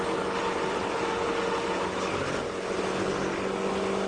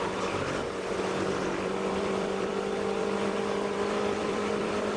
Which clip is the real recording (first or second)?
first